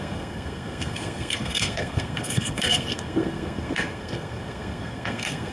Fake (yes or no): yes